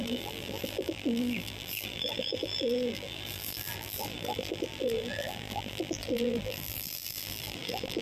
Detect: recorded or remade remade